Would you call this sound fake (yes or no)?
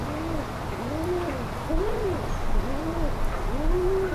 no